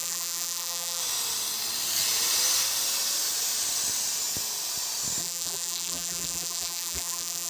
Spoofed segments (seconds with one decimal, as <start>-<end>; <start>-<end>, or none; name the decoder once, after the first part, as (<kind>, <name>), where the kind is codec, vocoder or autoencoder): 0.0-1.0 (vocoder, BigVGAN v2); 5.2-7.5